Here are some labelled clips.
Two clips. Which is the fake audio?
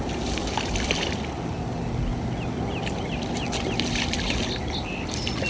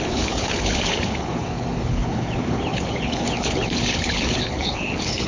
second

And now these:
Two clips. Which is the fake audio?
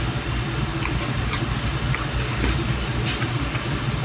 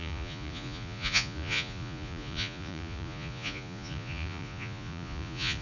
second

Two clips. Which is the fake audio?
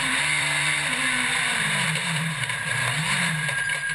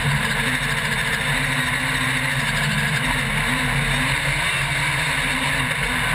first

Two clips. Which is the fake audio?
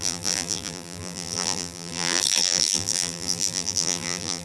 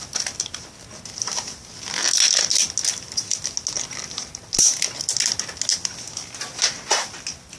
first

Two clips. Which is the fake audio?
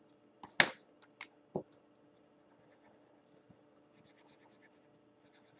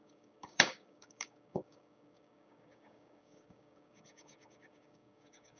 second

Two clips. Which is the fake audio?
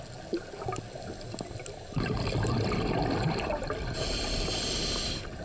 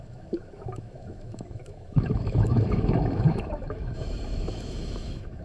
second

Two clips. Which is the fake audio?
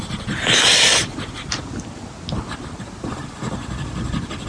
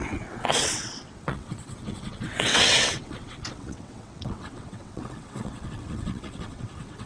second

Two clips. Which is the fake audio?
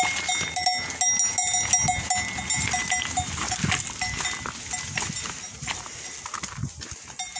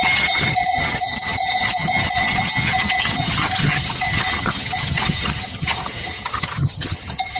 second